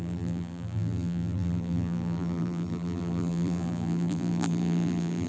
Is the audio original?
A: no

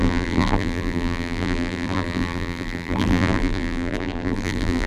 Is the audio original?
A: no